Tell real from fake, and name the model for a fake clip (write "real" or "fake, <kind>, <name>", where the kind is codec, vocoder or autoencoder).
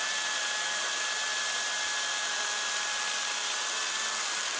real